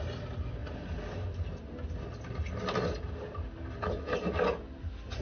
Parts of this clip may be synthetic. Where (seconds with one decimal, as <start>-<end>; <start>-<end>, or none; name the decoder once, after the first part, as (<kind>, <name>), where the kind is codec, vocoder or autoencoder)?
none